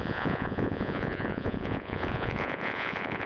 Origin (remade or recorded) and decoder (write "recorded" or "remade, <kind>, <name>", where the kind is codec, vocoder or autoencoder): remade, vocoder, Vocos